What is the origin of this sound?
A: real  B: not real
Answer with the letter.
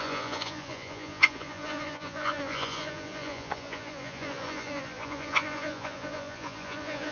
B